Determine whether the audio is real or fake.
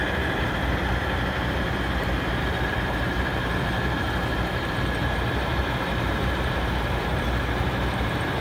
fake